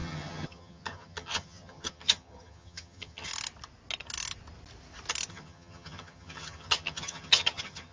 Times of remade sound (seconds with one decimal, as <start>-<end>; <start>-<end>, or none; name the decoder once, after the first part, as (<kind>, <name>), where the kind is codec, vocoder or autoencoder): 0.0-3.3 (vocoder, HiFi-GAN); 5.3-7.9